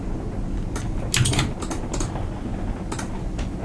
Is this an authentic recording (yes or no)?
yes